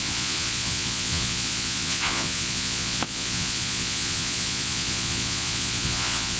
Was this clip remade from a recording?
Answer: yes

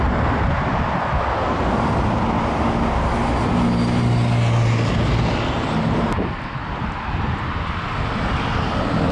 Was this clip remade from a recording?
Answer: no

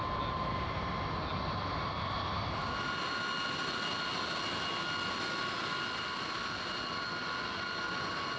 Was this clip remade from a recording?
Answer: no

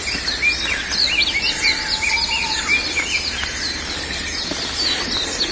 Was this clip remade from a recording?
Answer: no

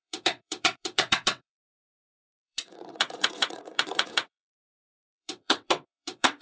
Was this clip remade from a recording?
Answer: yes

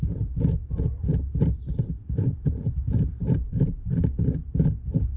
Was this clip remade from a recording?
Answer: yes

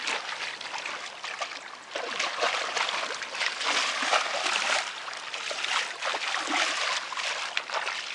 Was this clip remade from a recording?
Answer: no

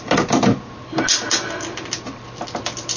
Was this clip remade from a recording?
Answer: no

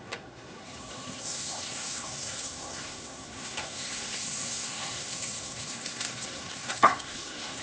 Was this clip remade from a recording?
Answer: yes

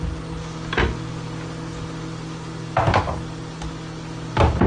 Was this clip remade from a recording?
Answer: no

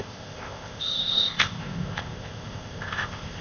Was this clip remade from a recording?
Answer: yes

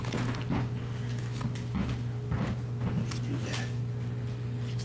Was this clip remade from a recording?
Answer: no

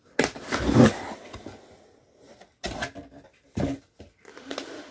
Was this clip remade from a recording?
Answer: no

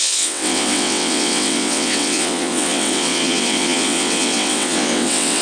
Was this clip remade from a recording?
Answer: yes